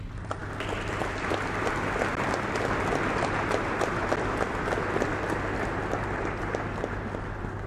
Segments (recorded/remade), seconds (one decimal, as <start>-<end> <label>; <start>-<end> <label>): 0.0-7.7 recorded